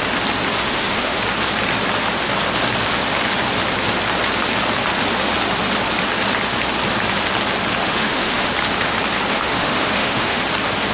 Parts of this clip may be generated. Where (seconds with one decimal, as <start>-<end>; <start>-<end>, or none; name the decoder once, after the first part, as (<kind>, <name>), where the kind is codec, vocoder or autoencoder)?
0.6-1.2 (autoencoder, DAC-VAE); 7.8-8.5; 9.3-10.4